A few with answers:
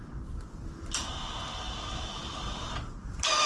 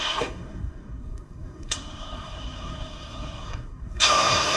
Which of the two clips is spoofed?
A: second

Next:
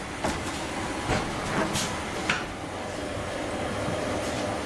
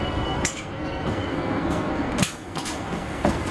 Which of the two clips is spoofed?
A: second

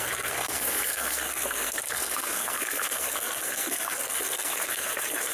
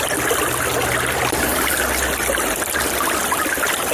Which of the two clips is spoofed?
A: first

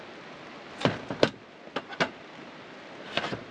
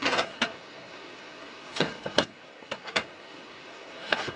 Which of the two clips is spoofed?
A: second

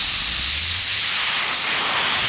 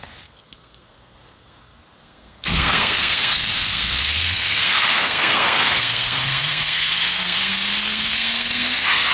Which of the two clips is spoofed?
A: second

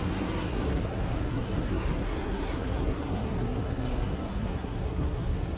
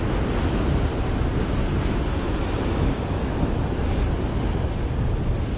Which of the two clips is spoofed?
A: first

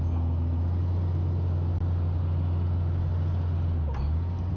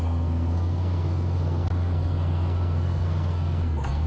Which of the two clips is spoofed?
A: second